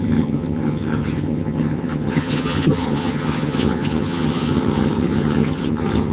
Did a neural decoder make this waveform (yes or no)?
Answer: yes